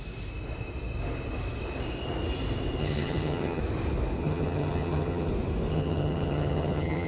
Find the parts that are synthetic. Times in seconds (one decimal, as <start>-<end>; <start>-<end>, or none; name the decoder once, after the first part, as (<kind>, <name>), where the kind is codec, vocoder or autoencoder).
2.8-3.6 (vocoder, HiFi-GAN); 4.2-5.3; 5.7-7.1